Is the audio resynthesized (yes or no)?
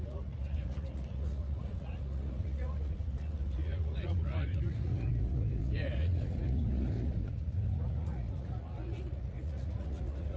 yes